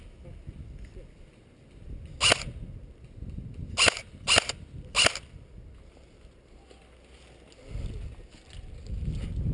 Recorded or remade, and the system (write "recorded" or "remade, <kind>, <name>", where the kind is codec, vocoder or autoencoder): recorded